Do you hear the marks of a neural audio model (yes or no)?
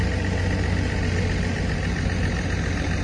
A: no